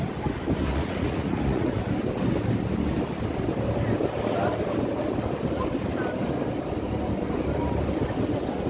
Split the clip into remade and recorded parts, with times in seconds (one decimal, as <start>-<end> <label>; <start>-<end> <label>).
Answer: 0.0-0.7 recorded; 0.7-1.8 remade; 1.8-8.7 recorded